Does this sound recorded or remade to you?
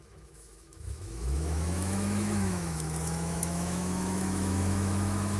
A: remade